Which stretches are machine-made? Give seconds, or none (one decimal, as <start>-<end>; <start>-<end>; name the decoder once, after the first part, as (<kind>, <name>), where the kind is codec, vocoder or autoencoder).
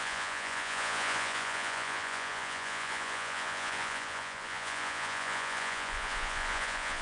0.0-7.0 (vocoder, Vocos)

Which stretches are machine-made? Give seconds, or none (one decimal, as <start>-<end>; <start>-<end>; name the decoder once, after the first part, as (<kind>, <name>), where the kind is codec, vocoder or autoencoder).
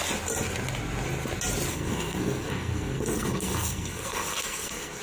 1.7-5.0 (codec, SNAC)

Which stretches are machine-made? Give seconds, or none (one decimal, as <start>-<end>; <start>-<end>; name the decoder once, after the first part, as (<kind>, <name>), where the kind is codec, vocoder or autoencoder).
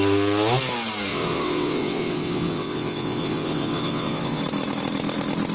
1.1-4.4 (vocoder, WaveNeXt)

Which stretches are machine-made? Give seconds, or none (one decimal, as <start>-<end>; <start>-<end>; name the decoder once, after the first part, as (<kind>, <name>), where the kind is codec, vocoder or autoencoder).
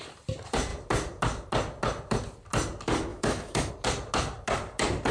3.1-3.7 (autoencoder, DAC-VAE)